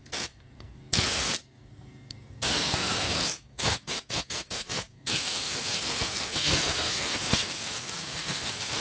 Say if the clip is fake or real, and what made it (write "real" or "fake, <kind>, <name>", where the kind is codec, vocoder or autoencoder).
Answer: fake, codec, SNAC